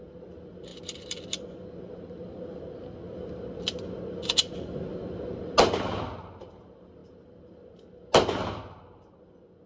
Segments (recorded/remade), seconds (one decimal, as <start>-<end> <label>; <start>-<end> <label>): 0.0-9.7 recorded